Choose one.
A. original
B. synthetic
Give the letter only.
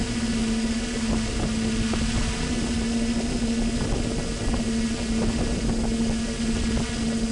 A